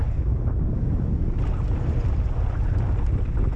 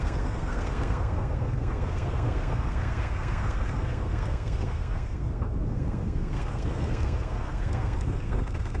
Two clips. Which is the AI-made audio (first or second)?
second